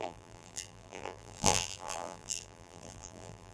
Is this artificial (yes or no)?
yes